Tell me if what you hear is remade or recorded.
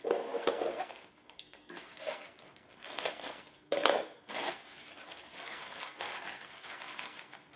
remade